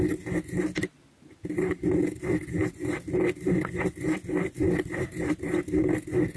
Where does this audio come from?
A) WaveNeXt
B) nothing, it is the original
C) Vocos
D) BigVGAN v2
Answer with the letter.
B